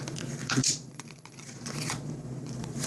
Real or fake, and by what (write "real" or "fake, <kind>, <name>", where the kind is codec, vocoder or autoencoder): fake, vocoder, Vocos